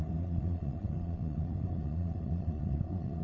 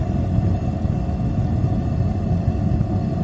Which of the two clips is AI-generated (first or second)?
first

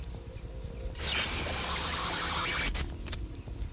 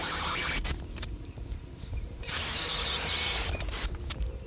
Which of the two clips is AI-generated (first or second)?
second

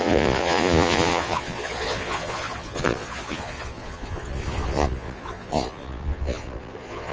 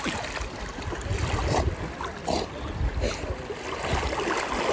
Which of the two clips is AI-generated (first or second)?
first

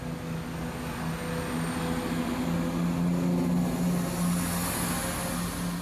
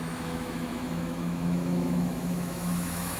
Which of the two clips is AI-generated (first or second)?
second